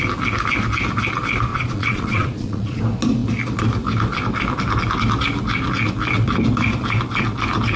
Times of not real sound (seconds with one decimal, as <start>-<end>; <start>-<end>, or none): 1.5-2.8